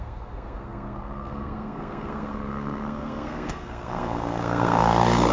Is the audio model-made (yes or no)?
yes